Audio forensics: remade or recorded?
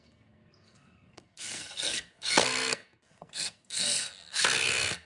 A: remade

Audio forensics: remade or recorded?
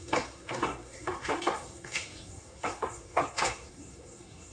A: remade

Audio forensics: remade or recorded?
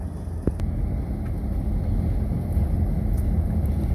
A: recorded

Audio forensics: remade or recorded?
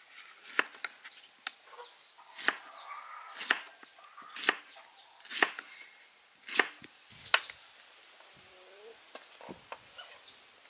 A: recorded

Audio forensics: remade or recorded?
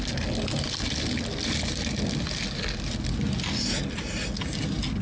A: recorded